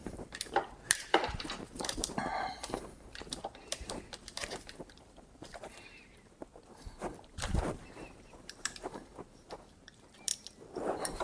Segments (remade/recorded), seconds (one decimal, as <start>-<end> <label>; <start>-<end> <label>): 0.0-10.3 remade; 10.3-11.2 recorded